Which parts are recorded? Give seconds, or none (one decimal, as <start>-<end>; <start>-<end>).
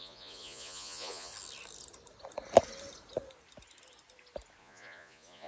1.3-4.6